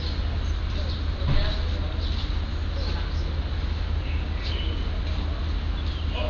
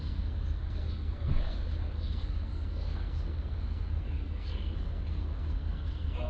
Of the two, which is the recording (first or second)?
first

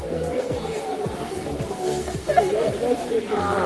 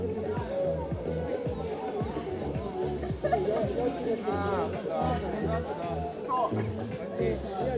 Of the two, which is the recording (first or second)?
second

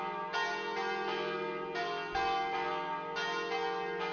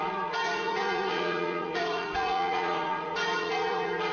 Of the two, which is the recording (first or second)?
first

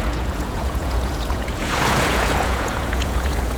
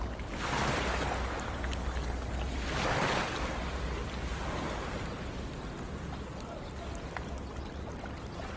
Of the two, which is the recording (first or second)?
second